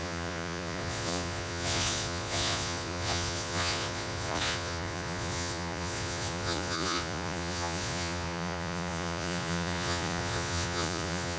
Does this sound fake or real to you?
fake